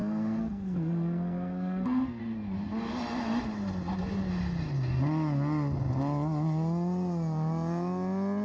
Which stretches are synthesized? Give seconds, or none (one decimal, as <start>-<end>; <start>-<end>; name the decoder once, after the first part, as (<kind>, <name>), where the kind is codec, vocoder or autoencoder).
0.0-2.2 (codec, SNAC)